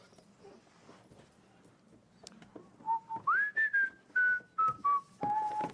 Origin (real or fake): real